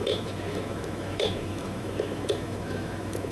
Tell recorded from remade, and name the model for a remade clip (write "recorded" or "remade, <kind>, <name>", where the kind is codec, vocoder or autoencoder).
remade, autoencoder, DAC-VAE